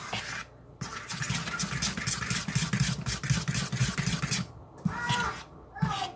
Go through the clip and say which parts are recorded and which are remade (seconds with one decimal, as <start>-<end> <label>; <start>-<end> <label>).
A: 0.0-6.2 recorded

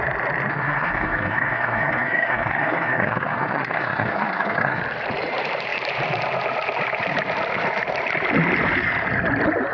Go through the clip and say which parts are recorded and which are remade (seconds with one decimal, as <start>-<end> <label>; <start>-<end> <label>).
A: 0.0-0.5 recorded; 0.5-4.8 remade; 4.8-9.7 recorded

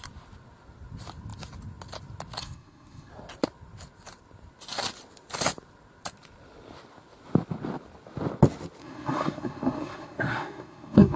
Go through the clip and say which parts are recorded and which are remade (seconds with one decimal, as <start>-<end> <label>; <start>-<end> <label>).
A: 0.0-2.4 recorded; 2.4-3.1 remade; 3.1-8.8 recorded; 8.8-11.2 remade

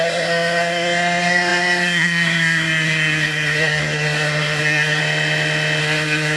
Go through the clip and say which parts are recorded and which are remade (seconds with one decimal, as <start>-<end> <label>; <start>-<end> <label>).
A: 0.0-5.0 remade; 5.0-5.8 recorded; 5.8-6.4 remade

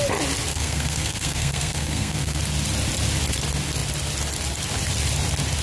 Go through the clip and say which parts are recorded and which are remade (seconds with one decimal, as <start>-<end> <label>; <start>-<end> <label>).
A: 0.0-0.5 recorded; 0.5-2.4 remade; 2.4-5.6 recorded

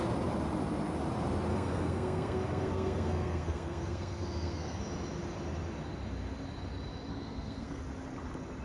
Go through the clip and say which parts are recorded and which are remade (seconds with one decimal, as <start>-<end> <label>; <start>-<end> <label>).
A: 0.0-1.5 recorded; 1.5-4.8 remade; 4.8-7.1 recorded; 7.1-7.8 remade; 7.8-8.6 recorded

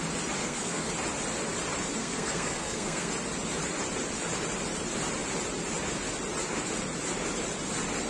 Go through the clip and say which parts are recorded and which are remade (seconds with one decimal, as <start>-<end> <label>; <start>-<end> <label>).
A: 0.0-0.4 recorded; 0.4-0.9 remade; 0.9-2.0 recorded; 2.0-3.1 remade; 3.1-8.1 recorded

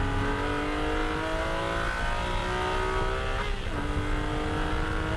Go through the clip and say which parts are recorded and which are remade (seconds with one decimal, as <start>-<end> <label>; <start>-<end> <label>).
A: 0.0-5.2 recorded